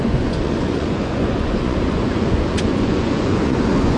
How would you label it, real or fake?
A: fake